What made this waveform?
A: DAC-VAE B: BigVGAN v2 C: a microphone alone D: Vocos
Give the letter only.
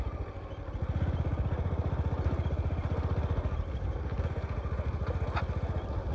C